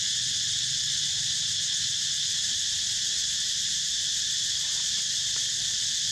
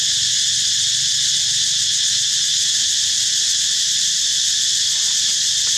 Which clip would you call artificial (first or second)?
first